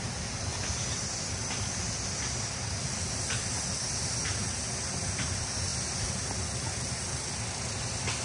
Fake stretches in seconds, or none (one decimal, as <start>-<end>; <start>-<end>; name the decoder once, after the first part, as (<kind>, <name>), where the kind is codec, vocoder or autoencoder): none